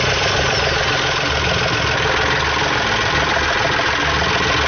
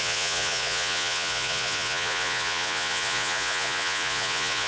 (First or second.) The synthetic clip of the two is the second